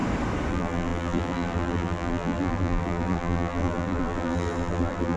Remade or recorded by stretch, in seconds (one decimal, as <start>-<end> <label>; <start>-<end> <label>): 0.0-0.5 recorded; 0.5-5.2 remade